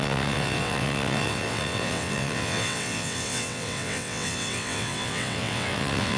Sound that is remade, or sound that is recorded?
remade